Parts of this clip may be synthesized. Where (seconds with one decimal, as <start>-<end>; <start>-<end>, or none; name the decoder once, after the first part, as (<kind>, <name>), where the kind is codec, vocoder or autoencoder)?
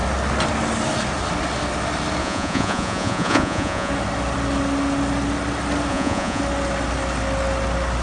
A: 2.2-3.9 (vocoder, Vocos); 5.9-6.4